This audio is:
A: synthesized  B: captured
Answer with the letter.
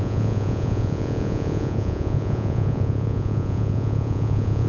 A